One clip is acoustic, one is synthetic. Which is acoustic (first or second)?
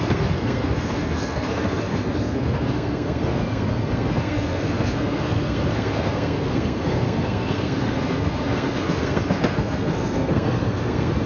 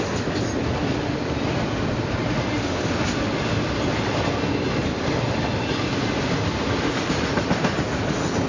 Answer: second